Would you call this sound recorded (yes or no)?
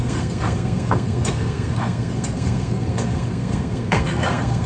no